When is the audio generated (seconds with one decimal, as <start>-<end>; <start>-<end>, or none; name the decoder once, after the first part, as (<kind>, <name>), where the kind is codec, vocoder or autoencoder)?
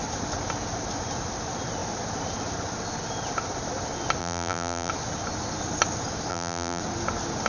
4.2-4.9 (vocoder, BigVGAN v2); 6.3-6.8